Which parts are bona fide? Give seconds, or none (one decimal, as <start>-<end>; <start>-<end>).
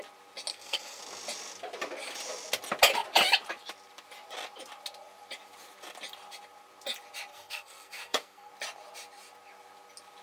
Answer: 0.0-0.5; 1.0-7.3; 8.5-10.2